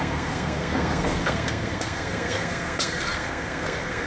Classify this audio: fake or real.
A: fake